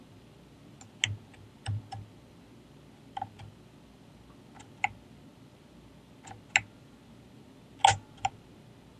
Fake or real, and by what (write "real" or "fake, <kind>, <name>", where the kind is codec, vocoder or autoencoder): real